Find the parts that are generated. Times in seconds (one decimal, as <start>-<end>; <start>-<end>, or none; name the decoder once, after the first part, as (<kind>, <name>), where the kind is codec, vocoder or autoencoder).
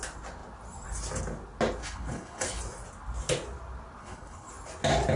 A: 1.8-2.6 (codec, HILCodec); 4.0-4.5